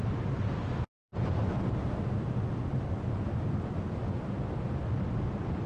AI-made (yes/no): no